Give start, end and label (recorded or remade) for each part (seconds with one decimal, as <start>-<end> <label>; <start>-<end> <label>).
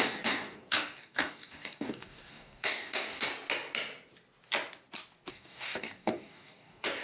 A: 0.0-3.3 remade; 3.3-5.3 recorded; 5.3-7.0 remade